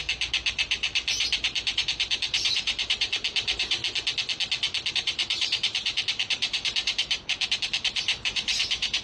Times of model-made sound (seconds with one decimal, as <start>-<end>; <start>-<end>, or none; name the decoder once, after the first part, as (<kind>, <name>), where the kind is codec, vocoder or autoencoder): 0.0-3.8 (vocoder, BigVGAN v2); 4.9-9.0